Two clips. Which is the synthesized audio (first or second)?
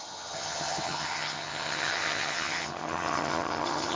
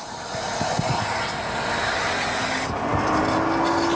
first